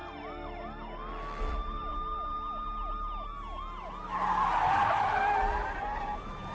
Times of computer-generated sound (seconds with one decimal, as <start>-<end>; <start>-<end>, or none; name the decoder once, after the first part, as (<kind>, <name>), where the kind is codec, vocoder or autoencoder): none